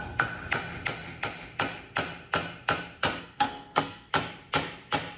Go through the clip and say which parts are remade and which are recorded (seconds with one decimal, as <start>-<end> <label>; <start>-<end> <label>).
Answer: 0.0-3.2 recorded; 3.2-4.1 remade; 4.1-5.2 recorded